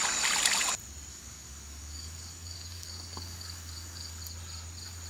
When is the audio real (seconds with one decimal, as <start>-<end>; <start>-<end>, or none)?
0.0-1.1; 4.2-5.1